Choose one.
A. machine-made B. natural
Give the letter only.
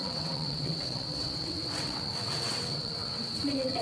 A